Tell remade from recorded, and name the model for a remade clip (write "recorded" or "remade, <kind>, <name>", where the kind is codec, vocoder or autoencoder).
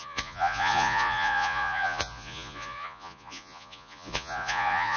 remade, vocoder, Vocos